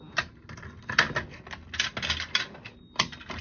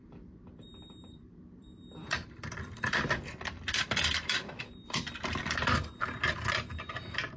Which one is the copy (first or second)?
second